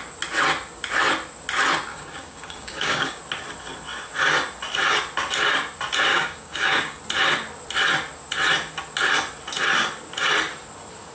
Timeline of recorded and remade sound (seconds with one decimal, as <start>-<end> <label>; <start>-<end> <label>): 0.0-1.9 recorded; 1.9-3.2 remade; 3.2-6.1 recorded; 6.1-7.0 remade; 7.0-11.1 recorded